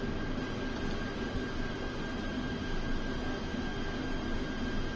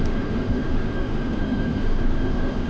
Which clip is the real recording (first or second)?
first